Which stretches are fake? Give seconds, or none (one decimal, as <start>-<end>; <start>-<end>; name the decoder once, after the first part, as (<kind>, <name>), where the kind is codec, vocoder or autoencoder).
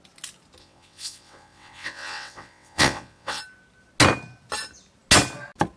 0.6-3.4 (vocoder, WaveNeXt)